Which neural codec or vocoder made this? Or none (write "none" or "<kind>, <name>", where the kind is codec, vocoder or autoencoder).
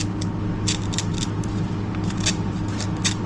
none